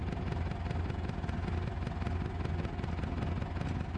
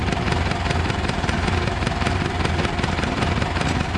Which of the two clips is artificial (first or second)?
second